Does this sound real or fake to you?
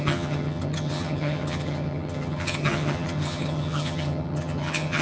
fake